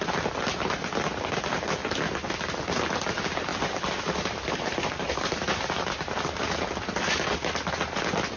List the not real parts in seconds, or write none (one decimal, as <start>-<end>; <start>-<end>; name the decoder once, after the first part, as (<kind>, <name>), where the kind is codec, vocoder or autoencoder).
3.5-6.5 (vocoder, BigVGAN v2)